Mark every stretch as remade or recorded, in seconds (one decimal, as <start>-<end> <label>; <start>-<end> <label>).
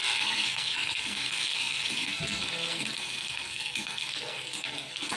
0.0-5.2 remade